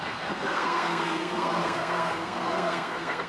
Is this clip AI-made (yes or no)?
yes